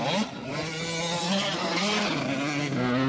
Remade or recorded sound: recorded